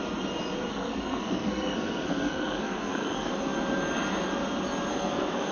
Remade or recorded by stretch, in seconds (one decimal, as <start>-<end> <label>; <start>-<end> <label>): 0.0-0.7 recorded; 0.7-3.3 remade; 3.3-4.9 recorded; 4.9-5.5 remade